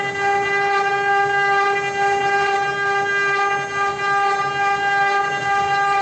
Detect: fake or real real